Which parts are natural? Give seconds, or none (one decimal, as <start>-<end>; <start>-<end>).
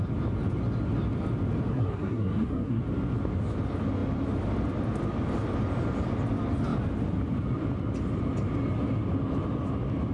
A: 0.0-1.7; 2.8-10.1